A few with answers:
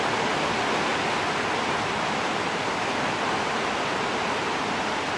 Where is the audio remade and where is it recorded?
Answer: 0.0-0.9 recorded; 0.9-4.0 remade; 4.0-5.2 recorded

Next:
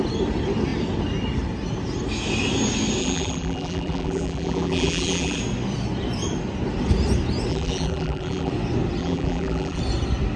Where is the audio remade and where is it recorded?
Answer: 0.0-3.0 recorded; 3.0-5.4 remade; 5.4-7.5 recorded; 7.5-8.5 remade; 8.5-9.0 recorded; 9.0-9.8 remade; 9.8-10.4 recorded